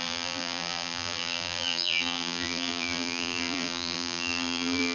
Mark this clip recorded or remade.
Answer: remade